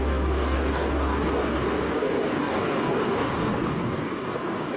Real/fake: fake